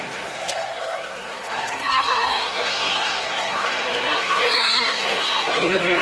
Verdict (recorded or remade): remade